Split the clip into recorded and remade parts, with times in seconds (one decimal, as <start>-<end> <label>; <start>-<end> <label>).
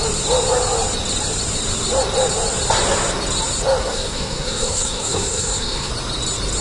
0.0-3.8 recorded; 3.8-5.9 remade; 5.9-6.6 recorded